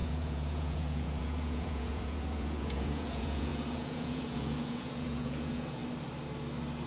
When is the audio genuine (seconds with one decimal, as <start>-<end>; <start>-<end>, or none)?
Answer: 5.8-6.9